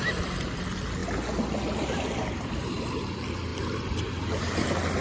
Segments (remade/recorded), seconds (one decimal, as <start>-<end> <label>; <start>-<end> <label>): 0.0-5.0 recorded